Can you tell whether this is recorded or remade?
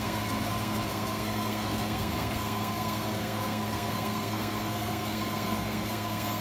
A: remade